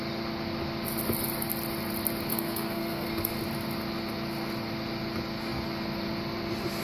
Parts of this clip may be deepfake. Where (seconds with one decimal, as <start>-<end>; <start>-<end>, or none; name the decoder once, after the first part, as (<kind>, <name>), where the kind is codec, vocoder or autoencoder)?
2.3-3.3 (codec, SNAC)